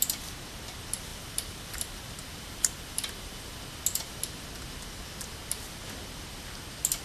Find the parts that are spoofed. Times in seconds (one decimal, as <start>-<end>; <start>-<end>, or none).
1.1-3.6